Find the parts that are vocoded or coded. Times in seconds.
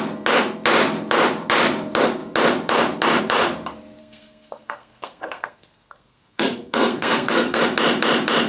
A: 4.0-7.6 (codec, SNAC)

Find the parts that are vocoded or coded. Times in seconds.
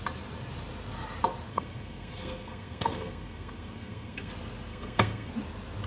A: 1.5-4.3 (codec, SNAC); 4.7-5.3